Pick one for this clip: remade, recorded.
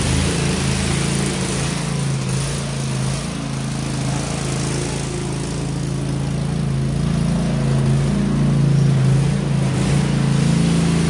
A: recorded